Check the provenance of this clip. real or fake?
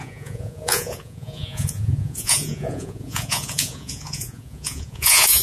fake